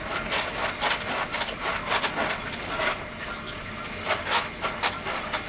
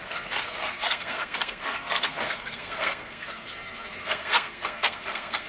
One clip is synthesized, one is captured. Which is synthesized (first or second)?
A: second